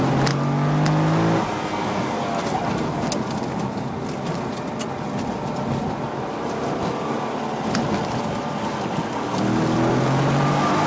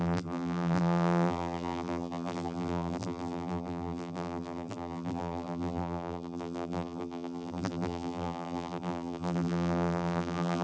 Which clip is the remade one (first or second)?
second